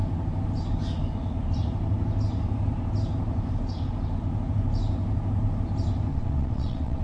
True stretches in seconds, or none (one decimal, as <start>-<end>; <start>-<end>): 0.0-6.1